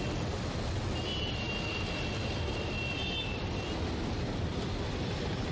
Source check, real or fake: real